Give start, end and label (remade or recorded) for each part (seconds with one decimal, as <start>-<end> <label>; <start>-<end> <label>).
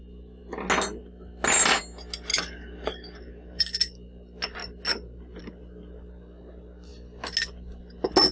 0.0-2.3 recorded; 2.3-3.6 remade; 3.6-8.3 recorded